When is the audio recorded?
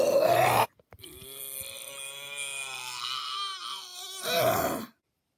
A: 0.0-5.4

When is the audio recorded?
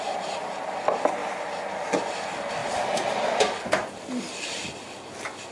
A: 0.0-5.5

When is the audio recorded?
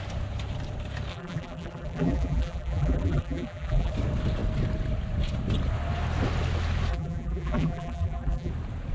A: 0.0-1.1; 3.9-6.9; 8.5-8.9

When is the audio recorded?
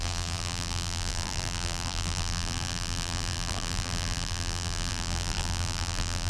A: none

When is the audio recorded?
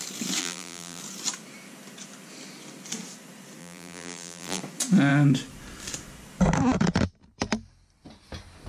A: 0.0-0.4; 1.0-3.6; 4.6-8.7